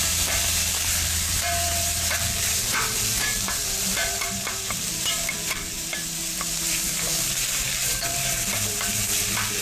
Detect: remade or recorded remade